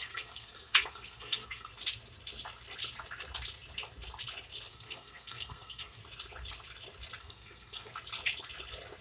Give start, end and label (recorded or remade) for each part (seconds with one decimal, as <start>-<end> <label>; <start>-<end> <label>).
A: 0.0-1.7 remade; 1.7-4.7 recorded; 4.7-6.0 remade; 6.0-7.2 recorded; 7.2-7.9 remade; 7.9-9.0 recorded